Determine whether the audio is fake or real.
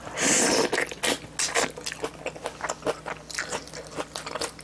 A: real